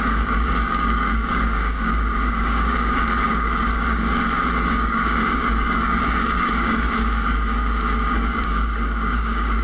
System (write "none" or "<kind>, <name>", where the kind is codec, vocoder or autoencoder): codec, DAC